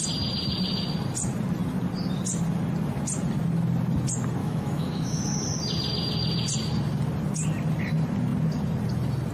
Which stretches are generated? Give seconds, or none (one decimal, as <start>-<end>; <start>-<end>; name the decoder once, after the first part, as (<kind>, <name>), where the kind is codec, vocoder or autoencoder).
4.4-5.2 (autoencoder, DAC-VAE)